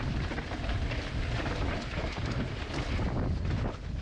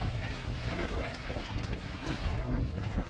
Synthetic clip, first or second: second